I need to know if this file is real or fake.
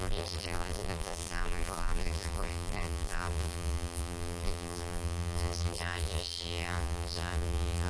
fake